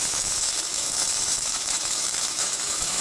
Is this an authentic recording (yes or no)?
no